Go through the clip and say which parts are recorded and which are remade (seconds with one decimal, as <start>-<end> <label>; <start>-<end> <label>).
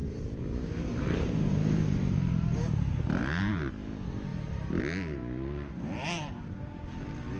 0.0-3.7 remade; 3.7-4.3 recorded; 4.3-4.8 remade; 4.8-6.0 recorded; 6.0-6.6 remade; 6.6-7.4 recorded